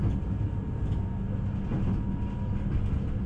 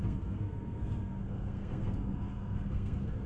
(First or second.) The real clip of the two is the first